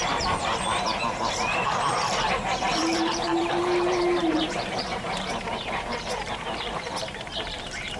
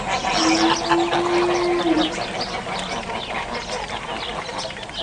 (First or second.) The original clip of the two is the second